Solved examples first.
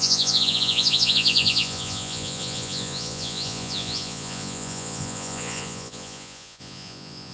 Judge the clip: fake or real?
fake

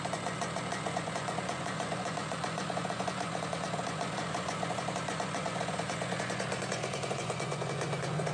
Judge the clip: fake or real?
fake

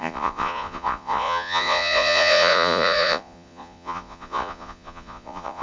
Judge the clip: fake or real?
fake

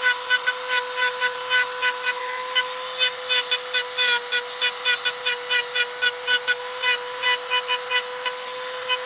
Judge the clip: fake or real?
real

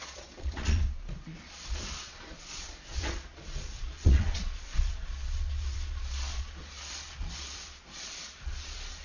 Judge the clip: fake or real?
fake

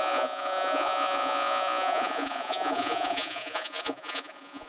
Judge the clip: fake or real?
fake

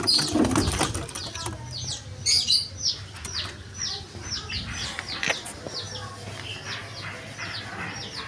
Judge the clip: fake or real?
real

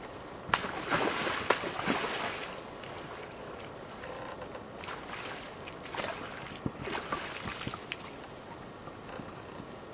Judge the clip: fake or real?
real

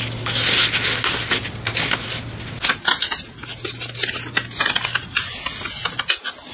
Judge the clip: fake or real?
real